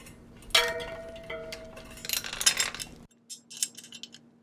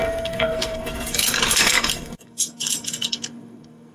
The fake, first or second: second